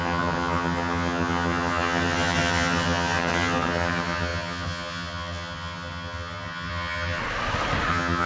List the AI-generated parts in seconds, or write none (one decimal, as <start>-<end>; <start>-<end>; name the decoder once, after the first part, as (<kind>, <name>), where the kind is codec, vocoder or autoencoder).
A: 0.0-7.2 (vocoder, HiFi-GAN); 7.9-8.3